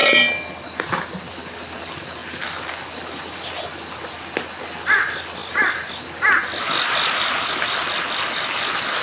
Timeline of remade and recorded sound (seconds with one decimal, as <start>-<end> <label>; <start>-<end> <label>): 0.0-9.0 recorded

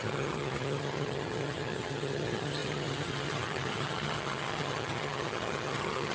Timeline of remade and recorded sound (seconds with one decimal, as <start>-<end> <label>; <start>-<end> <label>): 0.0-6.1 remade